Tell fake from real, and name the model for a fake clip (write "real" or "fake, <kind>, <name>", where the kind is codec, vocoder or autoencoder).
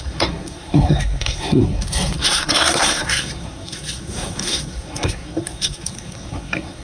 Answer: fake, codec, SNAC